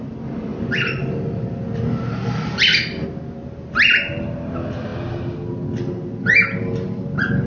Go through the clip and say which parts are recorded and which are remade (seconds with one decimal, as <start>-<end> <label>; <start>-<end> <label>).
0.0-7.5 recorded